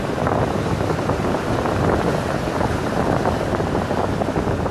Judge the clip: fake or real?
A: real